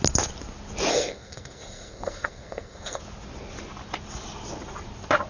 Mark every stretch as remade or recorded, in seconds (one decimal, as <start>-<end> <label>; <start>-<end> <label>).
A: 0.0-0.9 recorded; 0.9-3.0 remade; 3.0-5.3 recorded